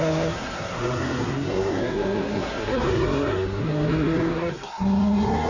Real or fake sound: fake